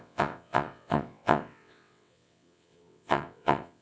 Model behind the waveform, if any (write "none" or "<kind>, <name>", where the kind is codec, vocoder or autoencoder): vocoder, WaveNeXt